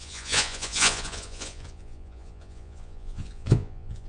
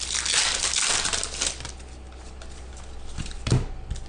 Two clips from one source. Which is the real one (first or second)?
second